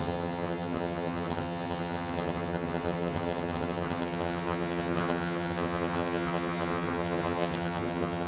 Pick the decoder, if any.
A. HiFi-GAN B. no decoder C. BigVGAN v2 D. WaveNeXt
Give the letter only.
A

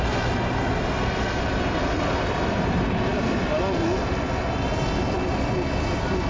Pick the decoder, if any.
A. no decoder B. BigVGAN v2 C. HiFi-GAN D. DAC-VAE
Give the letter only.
A